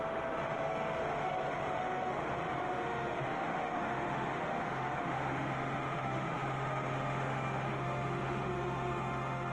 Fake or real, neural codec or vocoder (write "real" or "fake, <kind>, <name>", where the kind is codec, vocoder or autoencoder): fake, autoencoder, DAC-VAE